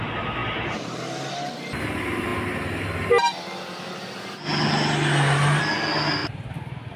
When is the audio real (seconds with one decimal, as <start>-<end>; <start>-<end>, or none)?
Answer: 0.0-6.2